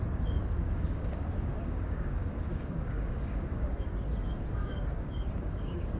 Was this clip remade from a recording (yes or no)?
yes